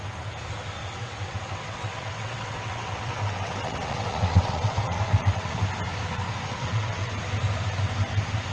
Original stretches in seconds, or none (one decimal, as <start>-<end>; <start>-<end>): 0.0-0.8; 5.6-6.5; 7.2-8.5